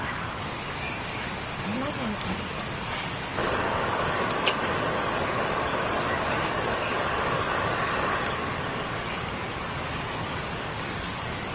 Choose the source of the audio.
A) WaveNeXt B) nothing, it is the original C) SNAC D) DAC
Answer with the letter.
D